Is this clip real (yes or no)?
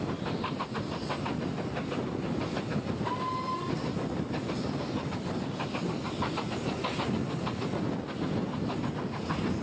yes